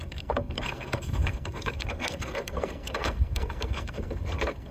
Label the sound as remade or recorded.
remade